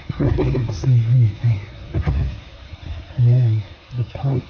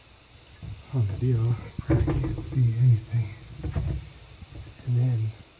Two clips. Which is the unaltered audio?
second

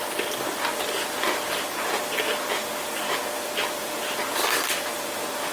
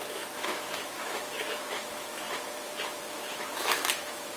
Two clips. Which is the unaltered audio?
first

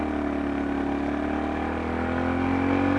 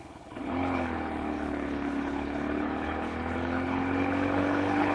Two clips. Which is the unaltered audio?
first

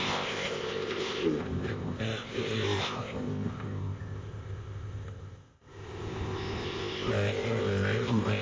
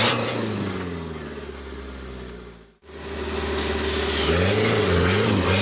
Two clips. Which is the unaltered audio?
second